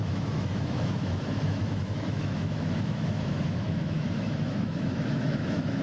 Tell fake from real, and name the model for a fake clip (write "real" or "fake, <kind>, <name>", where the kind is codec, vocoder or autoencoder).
fake, autoencoder, DAC-VAE